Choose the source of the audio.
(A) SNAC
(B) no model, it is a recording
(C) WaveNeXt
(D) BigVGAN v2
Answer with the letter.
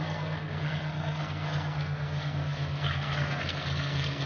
A